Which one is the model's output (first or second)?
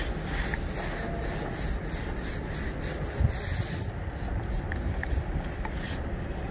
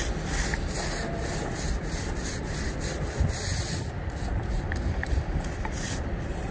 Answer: second